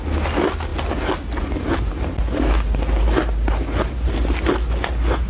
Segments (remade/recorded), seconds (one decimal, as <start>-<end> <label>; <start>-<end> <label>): 0.0-5.3 recorded